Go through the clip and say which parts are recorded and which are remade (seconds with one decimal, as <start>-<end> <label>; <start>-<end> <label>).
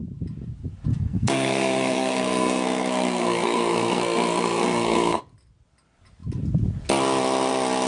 0.0-0.9 recorded; 0.9-5.2 remade; 5.2-7.9 recorded